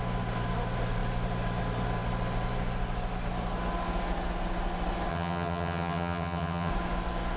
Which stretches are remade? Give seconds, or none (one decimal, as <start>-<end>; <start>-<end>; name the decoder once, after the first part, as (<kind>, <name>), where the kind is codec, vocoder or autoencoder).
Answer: 5.1-6.7 (vocoder, HiFi-GAN)